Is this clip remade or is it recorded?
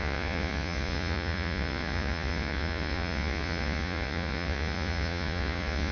remade